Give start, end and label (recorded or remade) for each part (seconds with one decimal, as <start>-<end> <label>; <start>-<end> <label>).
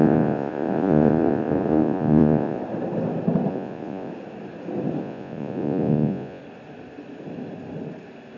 0.0-2.6 remade; 2.6-3.5 recorded; 3.5-4.1 remade; 4.1-5.0 recorded; 5.0-6.4 remade; 6.4-8.4 recorded